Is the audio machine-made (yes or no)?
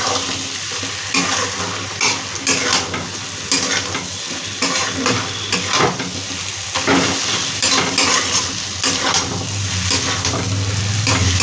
no